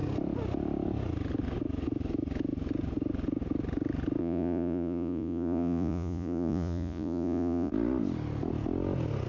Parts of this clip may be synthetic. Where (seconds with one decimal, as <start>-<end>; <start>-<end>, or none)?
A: 4.2-7.7

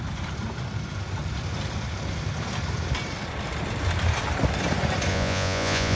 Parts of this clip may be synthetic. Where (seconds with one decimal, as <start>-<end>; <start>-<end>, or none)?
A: 5.1-6.0

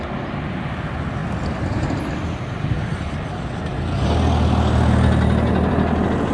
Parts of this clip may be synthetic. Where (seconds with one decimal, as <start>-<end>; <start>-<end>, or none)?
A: none